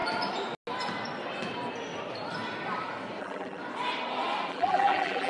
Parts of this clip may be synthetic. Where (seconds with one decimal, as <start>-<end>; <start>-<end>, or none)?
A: 3.2-3.6; 4.5-5.3